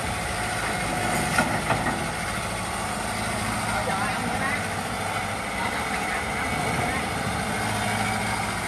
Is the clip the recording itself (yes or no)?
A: yes